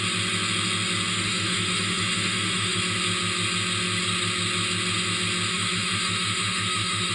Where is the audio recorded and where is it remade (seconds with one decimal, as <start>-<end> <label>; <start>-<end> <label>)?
0.0-1.1 recorded; 1.1-2.8 remade; 2.8-5.5 recorded; 5.5-7.1 remade